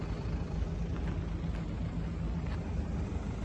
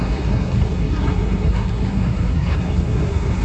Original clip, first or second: first